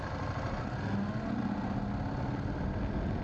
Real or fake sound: real